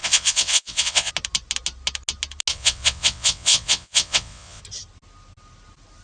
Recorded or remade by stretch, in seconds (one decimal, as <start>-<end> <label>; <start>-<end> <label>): 0.0-1.1 remade; 1.1-2.5 recorded; 2.5-4.6 remade; 4.6-6.0 recorded